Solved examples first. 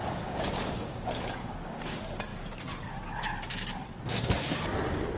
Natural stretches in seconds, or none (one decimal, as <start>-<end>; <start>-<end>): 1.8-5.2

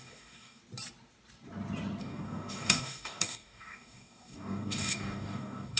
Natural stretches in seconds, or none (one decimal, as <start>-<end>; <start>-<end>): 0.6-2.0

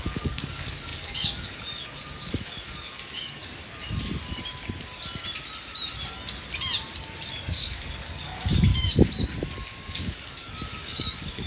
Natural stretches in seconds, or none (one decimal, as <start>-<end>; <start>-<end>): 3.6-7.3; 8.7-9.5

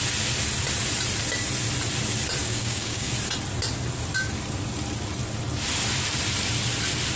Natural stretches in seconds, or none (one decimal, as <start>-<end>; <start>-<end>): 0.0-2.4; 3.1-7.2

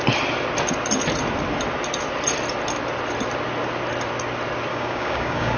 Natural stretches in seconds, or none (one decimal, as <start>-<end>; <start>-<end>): 0.0-4.7

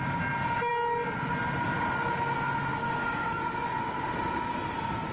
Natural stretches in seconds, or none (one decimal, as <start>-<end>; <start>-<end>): 0.0-2.8; 3.4-5.1

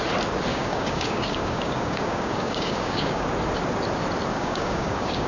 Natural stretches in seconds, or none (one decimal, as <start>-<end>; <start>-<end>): 0.0-0.5; 3.3-4.3